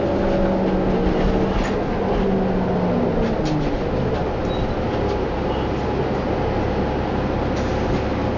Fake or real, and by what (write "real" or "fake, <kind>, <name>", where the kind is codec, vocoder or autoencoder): real